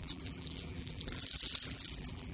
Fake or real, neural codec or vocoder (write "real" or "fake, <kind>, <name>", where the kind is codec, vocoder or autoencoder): fake, vocoder, BigVGAN v2